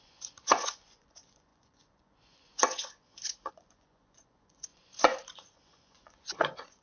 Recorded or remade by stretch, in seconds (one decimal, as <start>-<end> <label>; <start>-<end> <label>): 0.0-6.8 remade